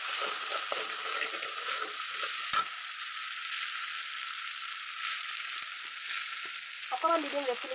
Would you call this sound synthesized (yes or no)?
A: no